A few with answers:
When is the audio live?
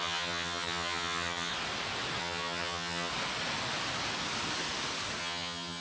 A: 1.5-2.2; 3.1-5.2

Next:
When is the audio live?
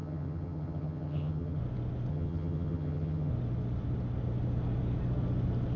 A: 1.6-2.1; 3.3-5.8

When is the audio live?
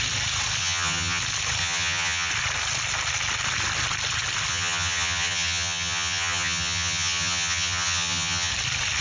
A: 0.0-0.6; 1.2-1.6; 2.3-4.5; 8.5-9.0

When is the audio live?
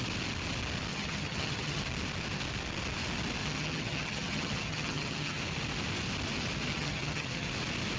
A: 0.0-0.9; 1.8-3.4; 5.4-6.7; 7.5-8.0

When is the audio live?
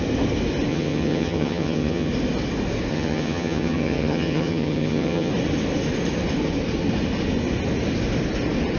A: 0.0-0.7; 2.1-2.9; 5.3-8.8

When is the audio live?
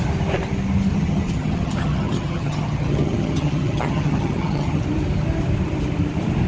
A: 0.0-0.9; 4.8-6.5